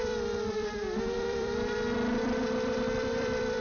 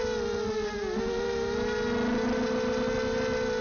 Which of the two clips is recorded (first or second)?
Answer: second